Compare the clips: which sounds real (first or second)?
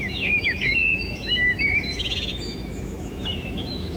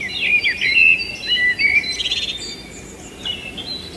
second